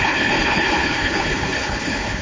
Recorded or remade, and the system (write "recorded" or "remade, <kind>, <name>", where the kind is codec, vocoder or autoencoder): remade, codec, HILCodec